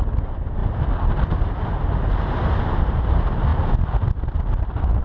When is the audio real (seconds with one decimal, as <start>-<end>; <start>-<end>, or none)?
0.0-5.0